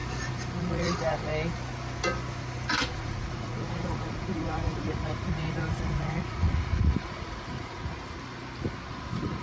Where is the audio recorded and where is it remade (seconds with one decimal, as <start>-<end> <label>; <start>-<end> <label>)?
0.0-0.6 recorded; 0.6-1.3 remade; 1.3-2.9 recorded; 2.9-7.9 remade; 7.9-8.9 recorded; 8.9-9.4 remade